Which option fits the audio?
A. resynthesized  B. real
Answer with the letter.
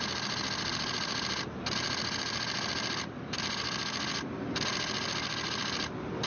B